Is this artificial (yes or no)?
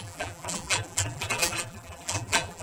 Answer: yes